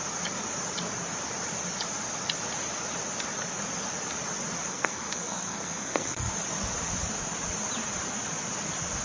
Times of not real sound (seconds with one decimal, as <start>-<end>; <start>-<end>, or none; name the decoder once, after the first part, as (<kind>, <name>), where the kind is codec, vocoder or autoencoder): 4.7-6.3 (codec, SNAC)